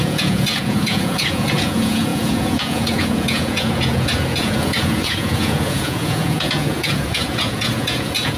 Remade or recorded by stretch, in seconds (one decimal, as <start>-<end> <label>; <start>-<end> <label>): 0.0-8.4 remade